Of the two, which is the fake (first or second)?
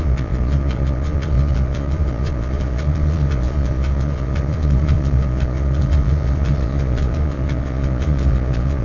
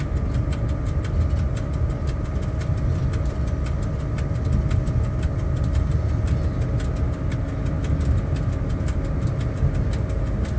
first